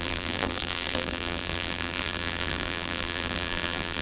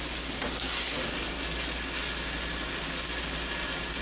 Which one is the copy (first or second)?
first